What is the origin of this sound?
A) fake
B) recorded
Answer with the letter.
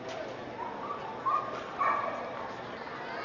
B